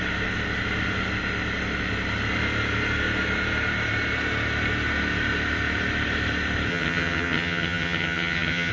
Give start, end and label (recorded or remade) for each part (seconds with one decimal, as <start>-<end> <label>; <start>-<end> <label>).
0.0-6.7 recorded; 6.7-8.7 remade

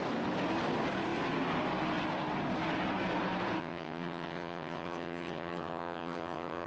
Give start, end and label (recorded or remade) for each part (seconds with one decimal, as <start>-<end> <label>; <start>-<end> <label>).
0.0-3.6 recorded; 3.6-6.7 remade

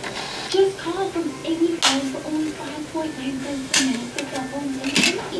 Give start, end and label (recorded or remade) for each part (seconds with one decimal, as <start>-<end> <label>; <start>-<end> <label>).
0.0-3.4 recorded; 3.4-4.1 remade; 4.1-5.4 recorded

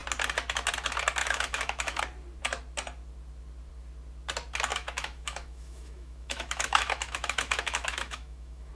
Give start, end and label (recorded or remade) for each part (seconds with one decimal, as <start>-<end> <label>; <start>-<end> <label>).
0.0-1.2 recorded; 1.2-2.0 remade; 2.0-4.7 recorded; 4.7-8.7 remade